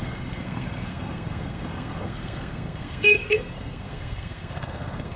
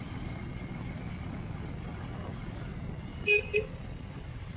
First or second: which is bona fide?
second